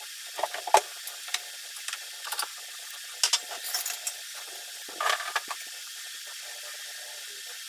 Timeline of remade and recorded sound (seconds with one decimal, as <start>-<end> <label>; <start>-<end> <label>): 0.0-7.7 recorded